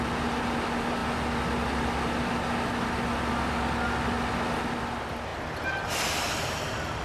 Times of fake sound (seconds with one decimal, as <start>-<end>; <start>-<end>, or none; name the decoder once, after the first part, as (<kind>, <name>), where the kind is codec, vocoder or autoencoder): none